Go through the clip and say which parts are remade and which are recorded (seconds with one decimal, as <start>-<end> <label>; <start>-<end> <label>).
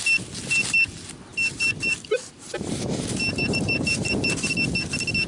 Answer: 0.0-1.3 recorded; 1.3-4.5 remade; 4.5-5.3 recorded